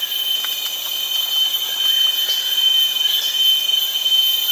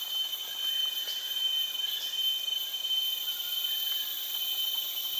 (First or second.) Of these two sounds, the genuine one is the first